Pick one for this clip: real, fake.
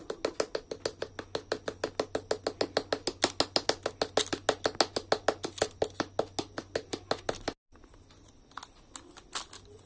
real